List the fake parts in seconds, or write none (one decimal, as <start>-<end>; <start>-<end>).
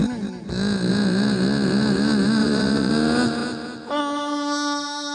2.4-2.9